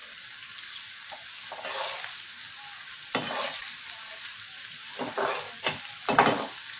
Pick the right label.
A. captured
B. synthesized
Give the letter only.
A